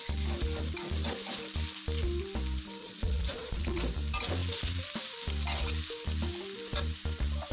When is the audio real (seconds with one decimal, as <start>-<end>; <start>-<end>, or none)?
0.0-2.8; 3.8-7.5